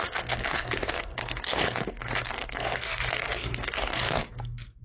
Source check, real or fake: fake